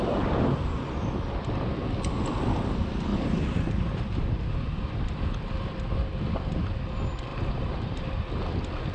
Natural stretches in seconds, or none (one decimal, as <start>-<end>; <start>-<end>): 0.0-3.1; 4.4-7.3; 8.1-8.9